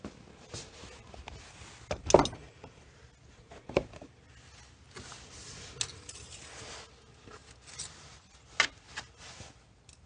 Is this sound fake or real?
real